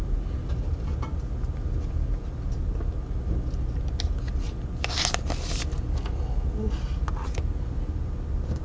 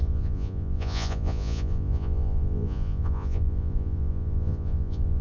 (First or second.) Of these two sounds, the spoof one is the second